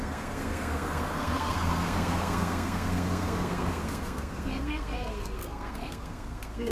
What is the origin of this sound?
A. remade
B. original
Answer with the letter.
A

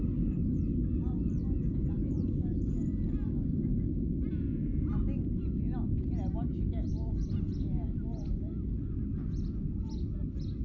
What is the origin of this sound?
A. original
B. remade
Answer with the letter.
A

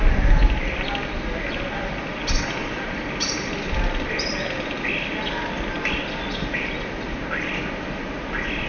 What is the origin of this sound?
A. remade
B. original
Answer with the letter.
B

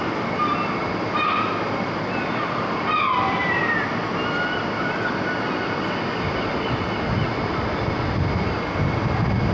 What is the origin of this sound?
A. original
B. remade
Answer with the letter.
A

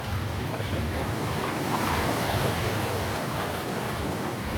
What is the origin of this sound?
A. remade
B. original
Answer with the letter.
A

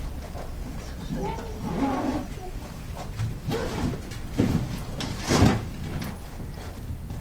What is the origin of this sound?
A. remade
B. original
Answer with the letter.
B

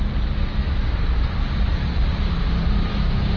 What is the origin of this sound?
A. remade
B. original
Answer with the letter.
B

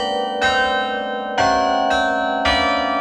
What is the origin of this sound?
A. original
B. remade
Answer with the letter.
A